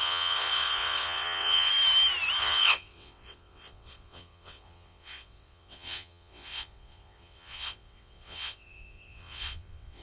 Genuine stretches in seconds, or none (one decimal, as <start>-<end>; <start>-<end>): 1.7-2.4